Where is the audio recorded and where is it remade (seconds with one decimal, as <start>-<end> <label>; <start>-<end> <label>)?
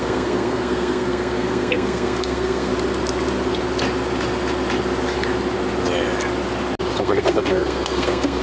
0.0-2.7 remade; 2.7-7.0 recorded; 7.0-8.4 remade